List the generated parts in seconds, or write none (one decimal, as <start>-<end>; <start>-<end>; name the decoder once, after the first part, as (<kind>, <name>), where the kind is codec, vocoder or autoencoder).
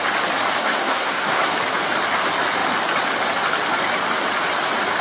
0.6-1.5 (codec, SNAC)